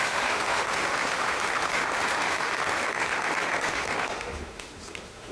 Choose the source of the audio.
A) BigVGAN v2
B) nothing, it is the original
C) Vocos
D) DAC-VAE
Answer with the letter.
D